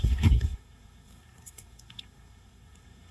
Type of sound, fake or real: fake